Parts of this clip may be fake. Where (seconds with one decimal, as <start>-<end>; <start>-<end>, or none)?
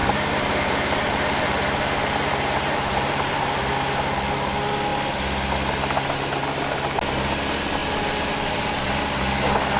0.0-3.7; 7.8-9.0